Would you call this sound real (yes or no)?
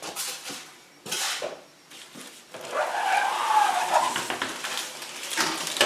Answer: no